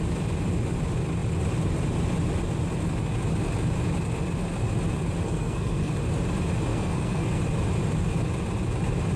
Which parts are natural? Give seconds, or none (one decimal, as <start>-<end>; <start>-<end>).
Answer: 0.0-5.2; 5.9-6.7; 7.4-9.2